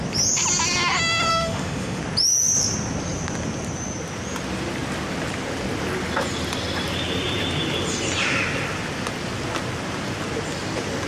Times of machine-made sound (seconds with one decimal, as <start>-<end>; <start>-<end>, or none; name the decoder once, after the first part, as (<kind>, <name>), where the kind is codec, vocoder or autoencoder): 1.3-2.0 (autoencoder, DAC-VAE)